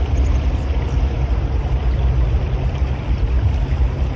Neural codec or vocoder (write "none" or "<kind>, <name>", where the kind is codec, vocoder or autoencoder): none